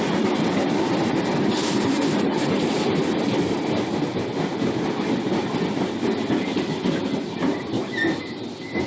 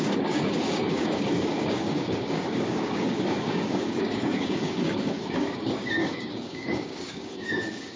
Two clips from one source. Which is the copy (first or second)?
second